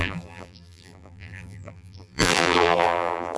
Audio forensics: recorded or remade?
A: remade